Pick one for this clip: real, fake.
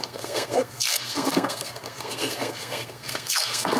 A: fake